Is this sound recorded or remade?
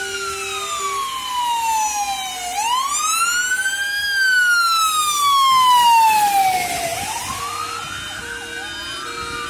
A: recorded